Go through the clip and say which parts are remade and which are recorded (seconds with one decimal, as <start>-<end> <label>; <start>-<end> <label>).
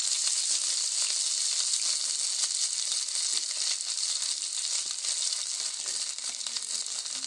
0.0-7.3 recorded